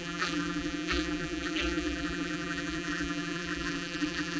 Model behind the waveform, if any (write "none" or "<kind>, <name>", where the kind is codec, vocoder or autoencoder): vocoder, BigVGAN v2